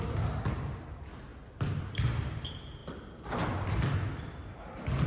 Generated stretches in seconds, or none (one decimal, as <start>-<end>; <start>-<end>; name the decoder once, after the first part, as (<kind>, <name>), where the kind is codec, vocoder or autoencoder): none